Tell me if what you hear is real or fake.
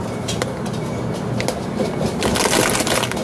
real